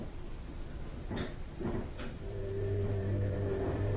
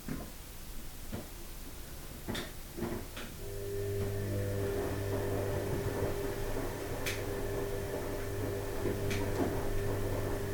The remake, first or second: first